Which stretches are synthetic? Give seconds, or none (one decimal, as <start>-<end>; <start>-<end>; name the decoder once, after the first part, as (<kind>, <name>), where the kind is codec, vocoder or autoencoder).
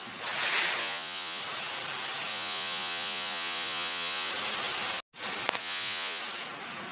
0.8-1.4 (vocoder, Vocos); 2.3-4.3; 5.6-6.2